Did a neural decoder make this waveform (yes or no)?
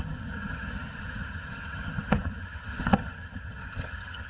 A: yes